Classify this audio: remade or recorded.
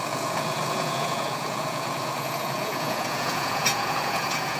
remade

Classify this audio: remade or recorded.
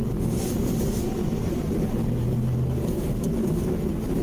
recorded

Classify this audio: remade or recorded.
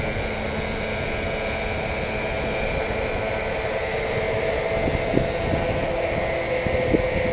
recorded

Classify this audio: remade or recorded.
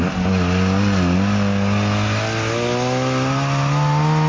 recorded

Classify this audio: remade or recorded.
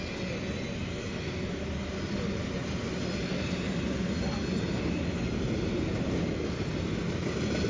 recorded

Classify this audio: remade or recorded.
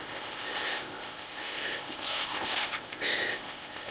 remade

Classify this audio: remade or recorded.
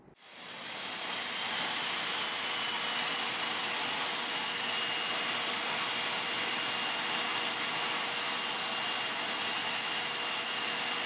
recorded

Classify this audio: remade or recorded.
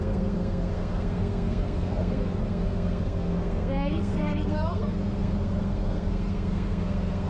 remade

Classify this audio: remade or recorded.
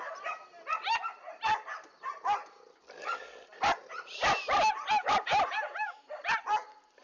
recorded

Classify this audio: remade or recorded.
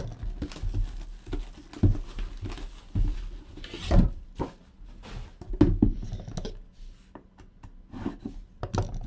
recorded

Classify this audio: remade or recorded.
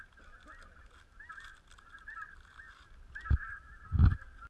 recorded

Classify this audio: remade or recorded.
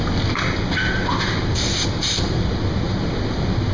recorded